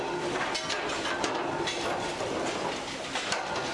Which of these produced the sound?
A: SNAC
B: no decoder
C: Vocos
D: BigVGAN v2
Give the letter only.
B